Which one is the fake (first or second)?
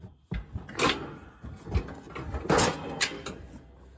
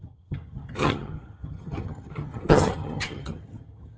second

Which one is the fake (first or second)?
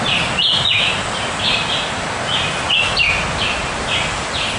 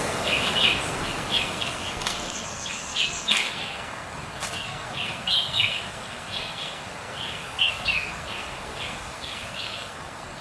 second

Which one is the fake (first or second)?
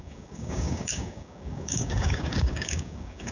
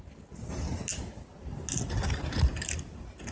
first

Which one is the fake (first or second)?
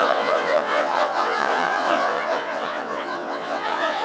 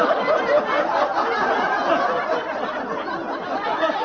first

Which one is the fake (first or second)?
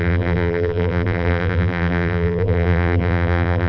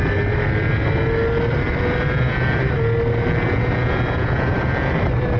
first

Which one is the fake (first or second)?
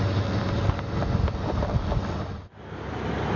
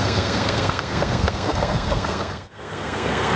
second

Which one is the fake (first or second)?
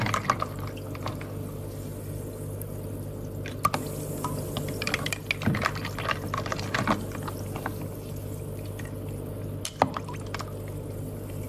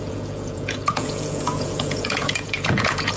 second